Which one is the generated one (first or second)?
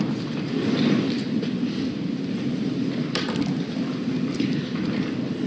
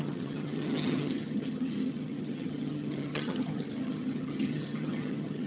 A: second